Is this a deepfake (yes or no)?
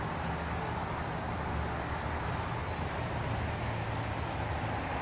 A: no